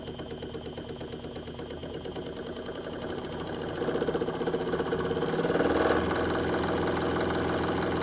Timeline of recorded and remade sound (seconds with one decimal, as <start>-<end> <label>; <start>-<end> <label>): 0.0-8.0 recorded